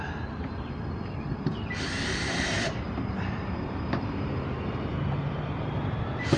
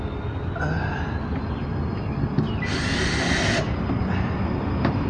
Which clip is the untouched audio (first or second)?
second